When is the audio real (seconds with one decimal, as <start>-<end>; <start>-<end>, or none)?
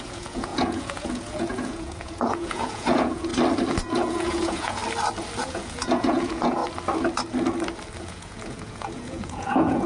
3.3-3.9; 4.8-5.4; 6.6-8.0